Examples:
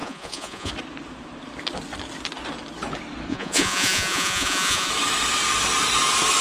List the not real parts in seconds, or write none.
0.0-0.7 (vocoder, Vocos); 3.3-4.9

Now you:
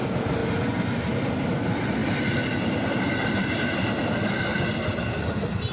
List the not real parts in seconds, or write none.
none

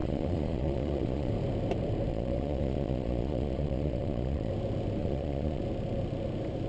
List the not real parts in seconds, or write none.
0.0-1.3 (vocoder, Vocos); 2.1-4.5; 5.0-5.6

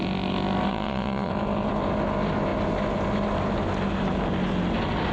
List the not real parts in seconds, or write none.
0.7-1.3 (vocoder, Vocos)

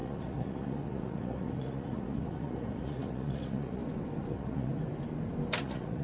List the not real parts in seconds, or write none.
0.0-3.8 (vocoder, Vocos); 4.3-4.7; 5.6-6.0

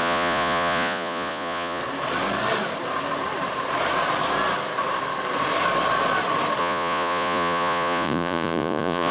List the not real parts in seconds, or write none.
0.0-1.8 (vocoder, Vocos); 6.6-9.1

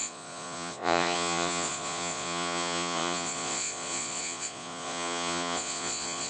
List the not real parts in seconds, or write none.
0.0-6.3 (vocoder, Vocos)